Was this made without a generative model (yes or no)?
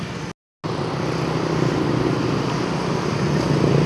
yes